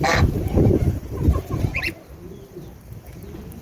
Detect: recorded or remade remade